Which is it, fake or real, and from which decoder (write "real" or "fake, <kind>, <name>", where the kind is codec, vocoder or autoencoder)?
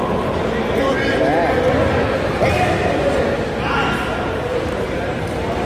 real